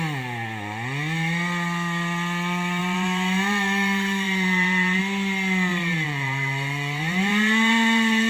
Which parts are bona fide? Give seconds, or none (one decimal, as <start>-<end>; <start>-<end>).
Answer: 0.0-2.8; 5.0-5.7

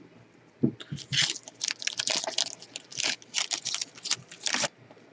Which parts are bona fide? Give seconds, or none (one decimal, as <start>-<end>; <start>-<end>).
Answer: 0.0-5.1

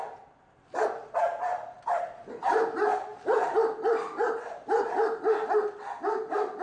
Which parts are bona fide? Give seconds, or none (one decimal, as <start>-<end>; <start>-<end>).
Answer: 0.0-3.1; 4.9-6.6

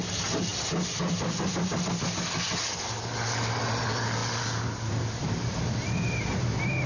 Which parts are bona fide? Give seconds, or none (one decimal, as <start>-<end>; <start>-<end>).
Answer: 0.0-4.2; 4.9-6.9

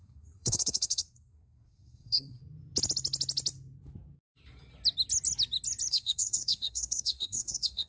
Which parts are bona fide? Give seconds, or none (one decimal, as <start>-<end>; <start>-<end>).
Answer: 2.4-5.9

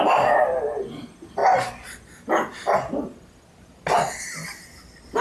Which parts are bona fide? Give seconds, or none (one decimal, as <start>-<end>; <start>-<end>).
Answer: 0.0-5.2